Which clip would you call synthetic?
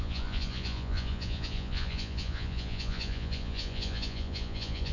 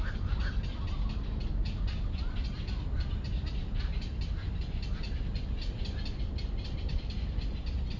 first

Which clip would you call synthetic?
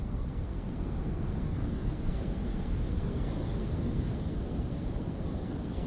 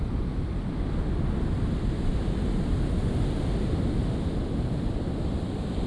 first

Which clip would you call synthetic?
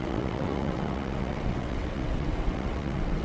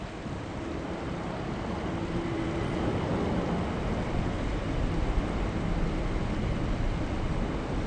first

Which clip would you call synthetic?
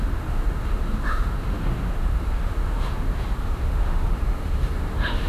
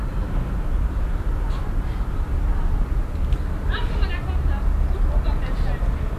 first